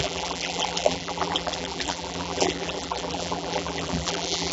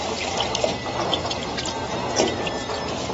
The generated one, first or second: first